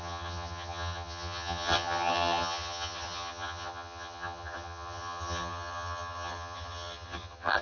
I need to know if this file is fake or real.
fake